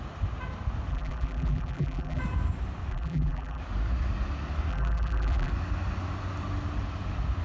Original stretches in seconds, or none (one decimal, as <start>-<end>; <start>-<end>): 0.0-0.9; 2.2-2.9; 3.6-4.7; 5.5-7.4